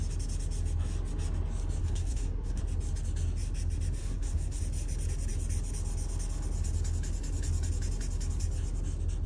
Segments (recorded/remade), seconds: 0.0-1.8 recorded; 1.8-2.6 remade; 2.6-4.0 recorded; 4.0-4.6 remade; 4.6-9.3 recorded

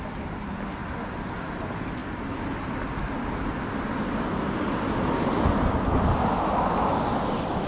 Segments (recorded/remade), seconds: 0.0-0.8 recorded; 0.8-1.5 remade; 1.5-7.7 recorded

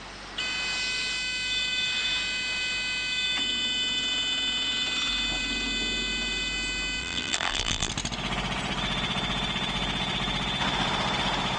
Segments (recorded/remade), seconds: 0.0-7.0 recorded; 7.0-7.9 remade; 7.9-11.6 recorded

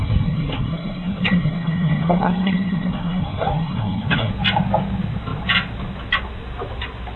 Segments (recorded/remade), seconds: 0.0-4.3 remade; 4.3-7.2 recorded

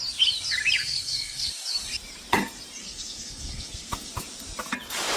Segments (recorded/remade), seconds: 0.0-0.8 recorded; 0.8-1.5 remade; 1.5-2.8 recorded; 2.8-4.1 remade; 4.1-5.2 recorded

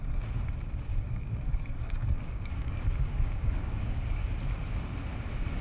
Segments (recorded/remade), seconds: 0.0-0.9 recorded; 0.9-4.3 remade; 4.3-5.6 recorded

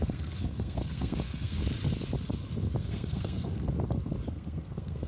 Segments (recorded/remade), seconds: 0.0-1.6 remade; 1.6-2.8 recorded; 2.8-3.7 remade; 3.7-4.3 recorded; 4.3-5.1 remade

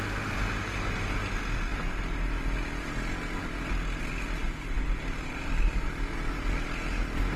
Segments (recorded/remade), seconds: 0.0-4.4 recorded; 4.4-5.9 remade; 5.9-7.4 recorded